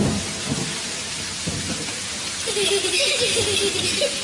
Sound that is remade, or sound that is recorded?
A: recorded